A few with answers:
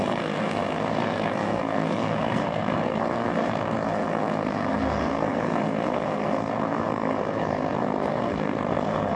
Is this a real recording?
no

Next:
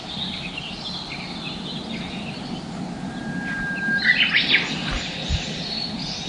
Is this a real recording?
yes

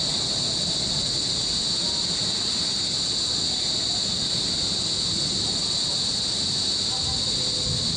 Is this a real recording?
yes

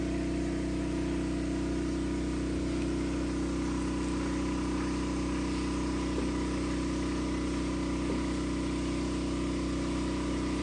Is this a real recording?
yes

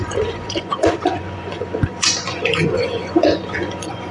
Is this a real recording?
no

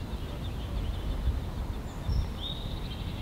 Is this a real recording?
yes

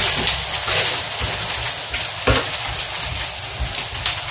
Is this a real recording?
yes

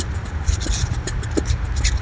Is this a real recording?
yes